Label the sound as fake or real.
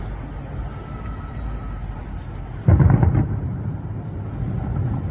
real